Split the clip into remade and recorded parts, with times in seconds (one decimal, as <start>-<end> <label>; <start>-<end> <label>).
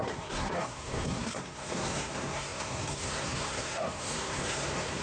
0.0-5.0 remade